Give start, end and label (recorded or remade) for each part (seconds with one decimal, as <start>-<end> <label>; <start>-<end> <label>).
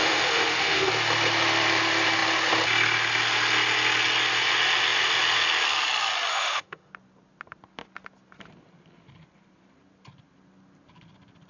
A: 0.0-0.9 remade; 0.9-6.3 recorded; 6.3-6.9 remade; 6.9-11.5 recorded